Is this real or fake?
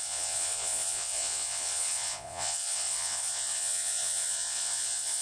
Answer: fake